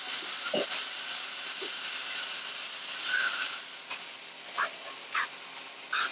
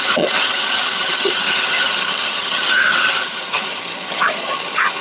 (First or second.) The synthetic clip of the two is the second